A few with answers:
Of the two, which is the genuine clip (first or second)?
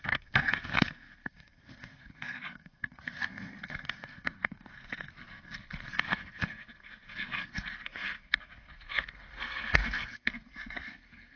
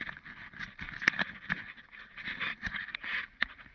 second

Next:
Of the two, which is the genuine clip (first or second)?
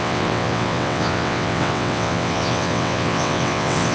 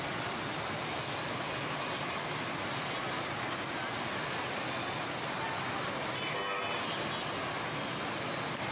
second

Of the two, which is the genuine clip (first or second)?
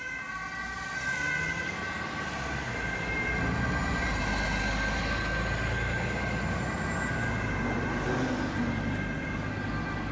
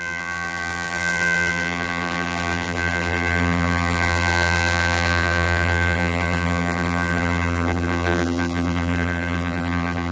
first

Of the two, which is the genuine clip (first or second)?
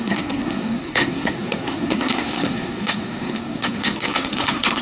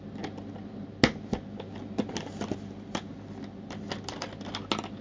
second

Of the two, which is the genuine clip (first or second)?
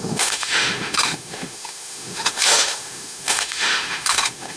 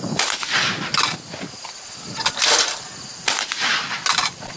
second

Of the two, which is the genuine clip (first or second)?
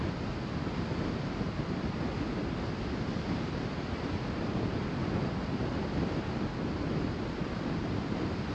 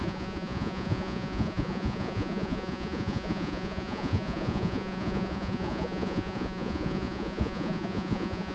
first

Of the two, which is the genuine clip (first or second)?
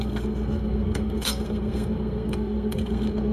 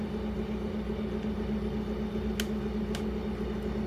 second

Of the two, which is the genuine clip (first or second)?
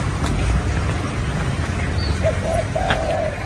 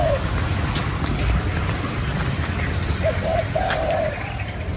first